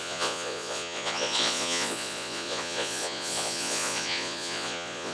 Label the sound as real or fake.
fake